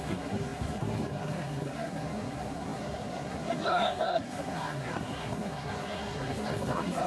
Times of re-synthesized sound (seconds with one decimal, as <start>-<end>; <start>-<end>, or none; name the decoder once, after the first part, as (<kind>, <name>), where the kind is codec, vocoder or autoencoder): 0.0-7.1 (codec, SNAC)